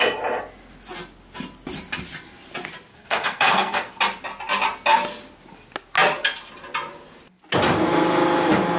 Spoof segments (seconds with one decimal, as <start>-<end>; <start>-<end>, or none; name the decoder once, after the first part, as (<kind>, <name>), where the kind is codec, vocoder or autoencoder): 2.9-4.0 (codec, SNAC)